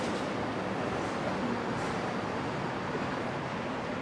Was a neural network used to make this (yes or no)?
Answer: no